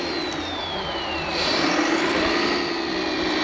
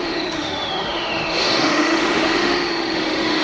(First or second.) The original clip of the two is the first